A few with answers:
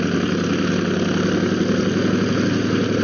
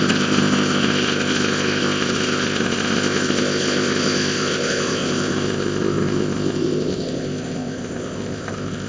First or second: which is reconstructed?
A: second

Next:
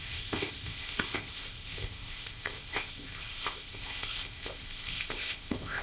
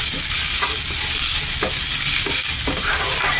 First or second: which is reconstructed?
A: first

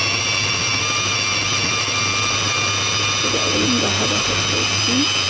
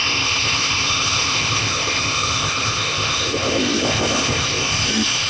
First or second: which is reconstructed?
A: second